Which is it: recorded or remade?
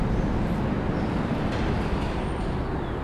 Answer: recorded